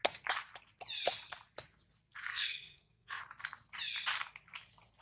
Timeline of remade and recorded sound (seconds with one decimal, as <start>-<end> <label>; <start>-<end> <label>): 0.0-2.3 recorded; 2.3-3.2 remade; 3.2-5.0 recorded